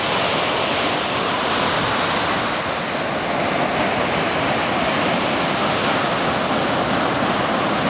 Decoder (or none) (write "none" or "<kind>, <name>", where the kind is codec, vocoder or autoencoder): none